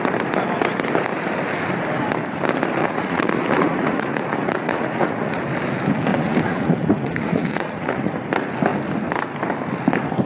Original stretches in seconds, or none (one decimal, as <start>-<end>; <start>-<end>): 0.0-2.8; 5.4-6.1; 8.1-10.3